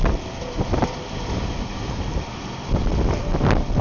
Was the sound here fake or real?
real